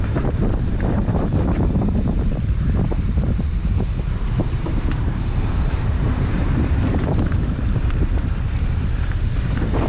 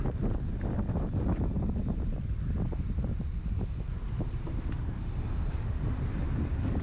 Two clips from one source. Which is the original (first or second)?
second